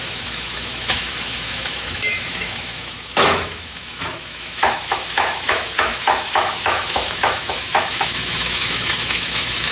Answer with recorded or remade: remade